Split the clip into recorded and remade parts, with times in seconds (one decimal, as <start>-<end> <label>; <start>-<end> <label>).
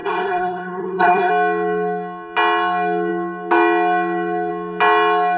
0.0-1.3 remade; 1.3-5.4 recorded